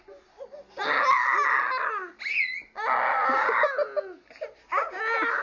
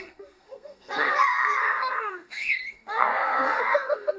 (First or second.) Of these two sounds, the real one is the first